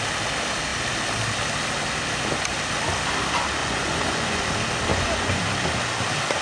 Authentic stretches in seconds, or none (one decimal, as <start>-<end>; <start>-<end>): 0.0-3.6; 4.4-4.9; 5.4-6.4